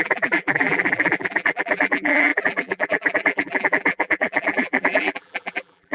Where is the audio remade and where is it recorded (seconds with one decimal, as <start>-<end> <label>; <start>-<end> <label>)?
0.0-5.9 remade

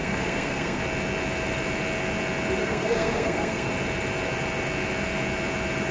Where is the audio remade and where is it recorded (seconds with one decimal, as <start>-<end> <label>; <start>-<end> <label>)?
0.0-0.8 remade; 0.8-2.6 recorded; 2.6-3.7 remade; 3.7-5.9 recorded

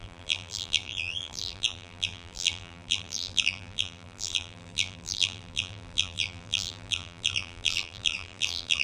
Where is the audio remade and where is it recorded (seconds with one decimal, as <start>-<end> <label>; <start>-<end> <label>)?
0.0-8.8 remade

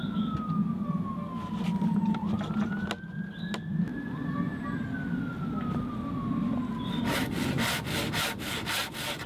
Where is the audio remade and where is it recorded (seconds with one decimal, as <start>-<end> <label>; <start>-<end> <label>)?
0.0-9.3 recorded

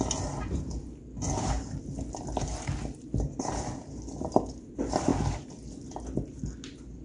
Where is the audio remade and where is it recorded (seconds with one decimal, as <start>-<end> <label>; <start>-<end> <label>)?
0.0-7.0 recorded